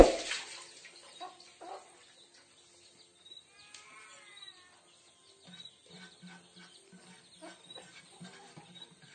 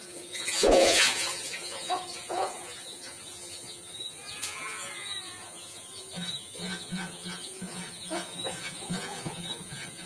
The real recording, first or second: first